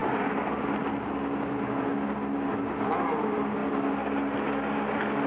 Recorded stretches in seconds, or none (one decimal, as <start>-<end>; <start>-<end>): 0.0-5.3